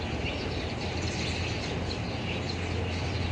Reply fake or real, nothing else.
real